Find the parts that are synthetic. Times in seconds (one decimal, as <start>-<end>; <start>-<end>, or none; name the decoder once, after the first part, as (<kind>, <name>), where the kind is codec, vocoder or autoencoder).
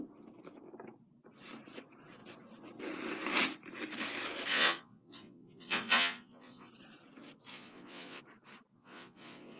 4.5-6.7 (vocoder, Vocos); 7.5-8.2; 8.7-9.6